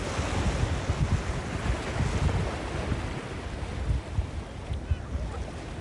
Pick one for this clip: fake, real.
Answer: real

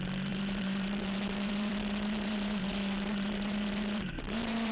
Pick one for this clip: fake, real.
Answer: fake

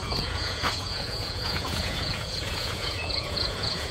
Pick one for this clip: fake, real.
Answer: fake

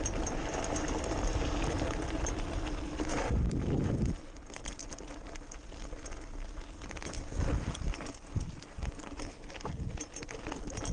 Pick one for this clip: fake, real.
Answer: real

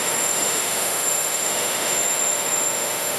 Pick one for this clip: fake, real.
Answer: fake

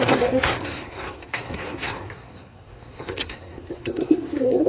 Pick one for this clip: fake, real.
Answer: fake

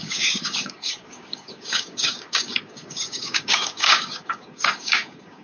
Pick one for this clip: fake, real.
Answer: fake